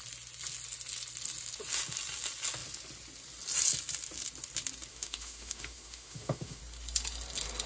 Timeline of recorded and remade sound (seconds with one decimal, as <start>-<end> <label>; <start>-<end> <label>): 0.0-4.9 recorded; 4.9-6.6 remade; 6.6-7.7 recorded